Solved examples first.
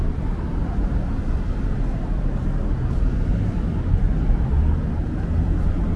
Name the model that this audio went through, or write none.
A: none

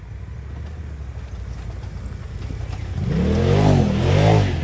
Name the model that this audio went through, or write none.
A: none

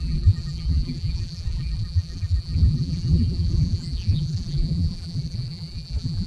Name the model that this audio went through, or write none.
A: vocoder, BigVGAN v2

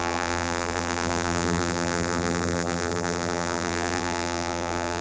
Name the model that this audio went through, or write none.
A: vocoder, BigVGAN v2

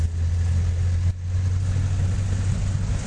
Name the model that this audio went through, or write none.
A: none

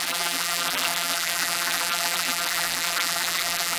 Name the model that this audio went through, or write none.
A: vocoder, BigVGAN v2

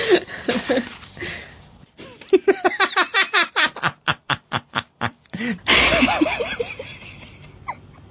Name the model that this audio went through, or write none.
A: vocoder, BigVGAN v2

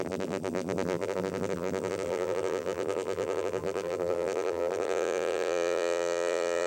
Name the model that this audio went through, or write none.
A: vocoder, BigVGAN v2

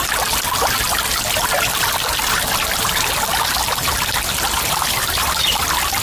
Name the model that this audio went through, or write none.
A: none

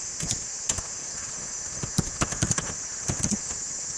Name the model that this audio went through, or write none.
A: none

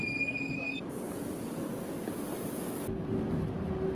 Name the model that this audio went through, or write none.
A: none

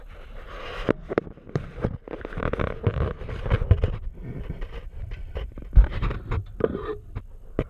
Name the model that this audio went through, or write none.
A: vocoder, BigVGAN v2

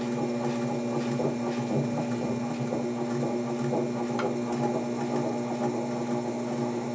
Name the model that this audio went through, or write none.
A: none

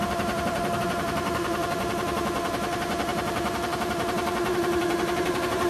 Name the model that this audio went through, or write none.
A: vocoder, BigVGAN v2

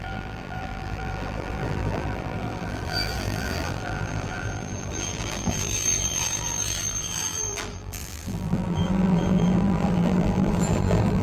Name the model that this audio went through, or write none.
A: vocoder, BigVGAN v2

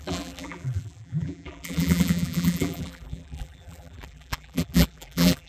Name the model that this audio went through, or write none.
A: vocoder, BigVGAN v2